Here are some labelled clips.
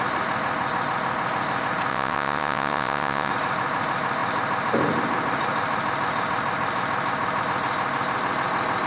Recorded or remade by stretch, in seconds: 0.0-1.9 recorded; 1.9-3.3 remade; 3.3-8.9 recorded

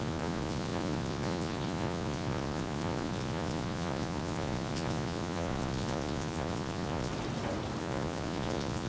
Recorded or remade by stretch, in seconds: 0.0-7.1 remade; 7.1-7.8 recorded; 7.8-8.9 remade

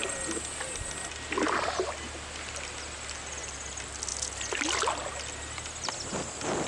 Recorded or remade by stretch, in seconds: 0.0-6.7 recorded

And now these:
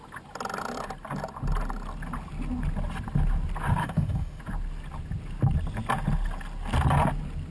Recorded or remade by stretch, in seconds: 0.0-3.8 recorded; 3.8-4.4 remade; 4.4-7.5 recorded

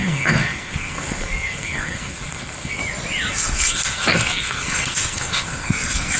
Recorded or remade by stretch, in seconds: 0.0-2.8 remade; 2.8-3.3 recorded; 3.3-6.2 remade

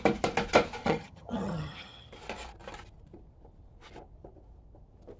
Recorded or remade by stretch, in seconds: 0.0-0.8 recorded; 0.8-2.1 remade; 2.1-5.2 recorded

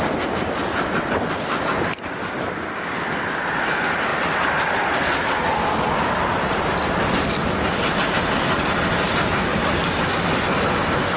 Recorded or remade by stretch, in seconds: 0.0-11.2 recorded